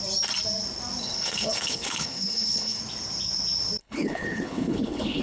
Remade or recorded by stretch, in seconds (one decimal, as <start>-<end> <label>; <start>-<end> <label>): 0.0-1.0 recorded; 1.0-2.8 remade; 2.8-3.8 recorded; 3.8-5.2 remade